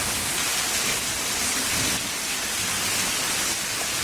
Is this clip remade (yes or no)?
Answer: no